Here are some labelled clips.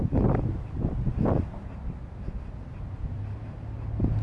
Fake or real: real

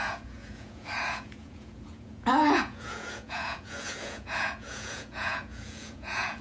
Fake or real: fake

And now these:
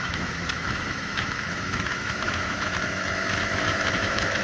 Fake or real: fake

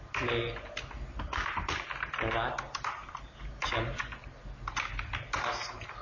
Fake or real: real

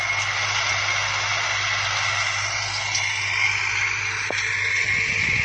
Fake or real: real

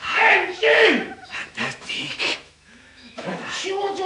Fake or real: fake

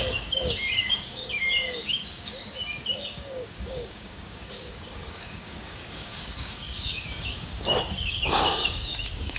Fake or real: fake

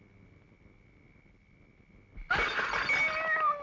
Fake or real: real